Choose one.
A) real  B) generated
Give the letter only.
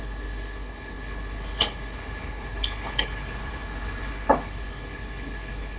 B